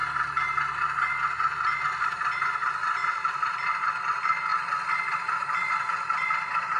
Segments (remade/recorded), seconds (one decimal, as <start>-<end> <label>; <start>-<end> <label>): 0.0-6.8 recorded